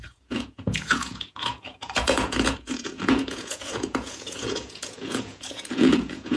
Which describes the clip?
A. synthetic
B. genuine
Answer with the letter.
A